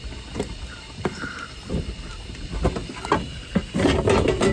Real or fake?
real